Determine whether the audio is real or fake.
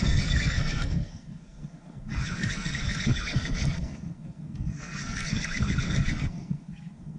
fake